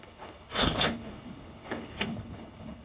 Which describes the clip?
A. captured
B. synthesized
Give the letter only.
B